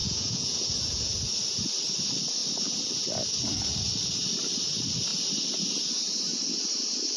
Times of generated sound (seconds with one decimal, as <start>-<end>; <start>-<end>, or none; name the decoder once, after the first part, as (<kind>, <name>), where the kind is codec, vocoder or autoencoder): 0.0-1.1 (vocoder, Vocos)